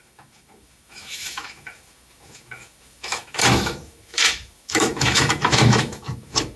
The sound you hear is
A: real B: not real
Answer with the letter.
B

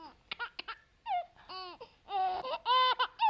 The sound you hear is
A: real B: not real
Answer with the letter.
A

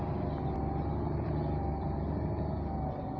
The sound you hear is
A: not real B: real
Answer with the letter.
B